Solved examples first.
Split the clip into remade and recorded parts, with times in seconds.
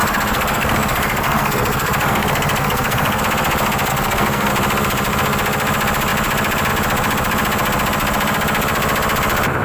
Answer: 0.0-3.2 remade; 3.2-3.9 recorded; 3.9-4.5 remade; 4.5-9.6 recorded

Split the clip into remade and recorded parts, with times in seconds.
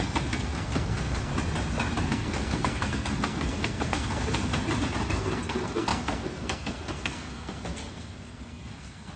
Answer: 0.0-1.3 remade; 1.3-2.0 recorded; 2.0-4.5 remade; 4.5-5.1 recorded; 5.1-9.2 remade